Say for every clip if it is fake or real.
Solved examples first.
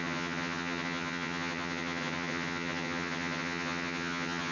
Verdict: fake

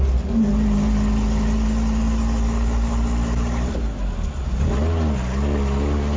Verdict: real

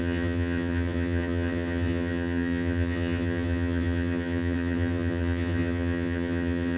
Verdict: fake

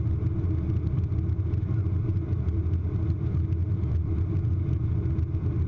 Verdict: real